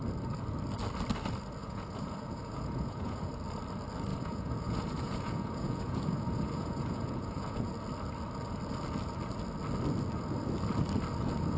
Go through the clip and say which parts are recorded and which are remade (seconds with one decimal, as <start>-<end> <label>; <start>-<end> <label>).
0.0-1.6 recorded; 1.6-3.3 remade; 3.3-4.1 recorded; 4.1-7.7 remade; 7.7-11.6 recorded